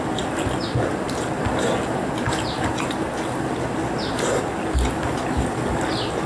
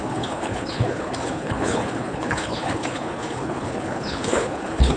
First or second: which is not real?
second